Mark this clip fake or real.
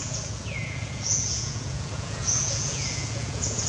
fake